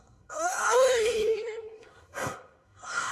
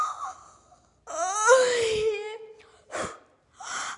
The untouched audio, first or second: second